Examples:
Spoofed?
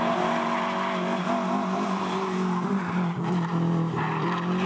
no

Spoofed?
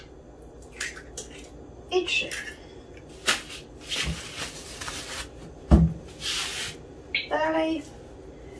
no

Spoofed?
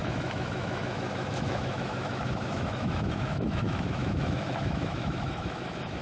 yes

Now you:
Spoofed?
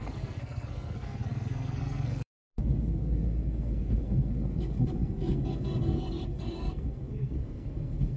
yes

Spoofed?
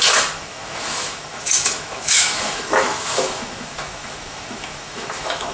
yes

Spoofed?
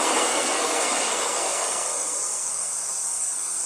yes